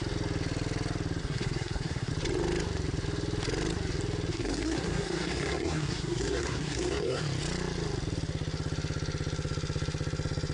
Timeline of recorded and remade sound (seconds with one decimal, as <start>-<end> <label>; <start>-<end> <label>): 0.0-1.2 recorded; 1.2-2.1 remade; 2.1-4.3 recorded; 4.3-7.2 remade; 7.2-10.5 recorded